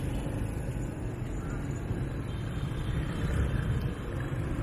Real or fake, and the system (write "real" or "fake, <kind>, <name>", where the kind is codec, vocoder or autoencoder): fake, vocoder, BigVGAN v2